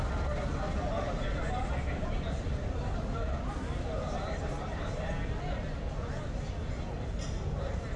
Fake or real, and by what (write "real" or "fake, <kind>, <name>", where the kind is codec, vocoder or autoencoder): real